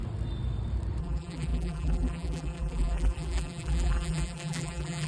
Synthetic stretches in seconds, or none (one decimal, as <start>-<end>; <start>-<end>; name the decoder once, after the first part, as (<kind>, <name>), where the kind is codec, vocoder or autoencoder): 1.0-5.1 (vocoder, BigVGAN v2)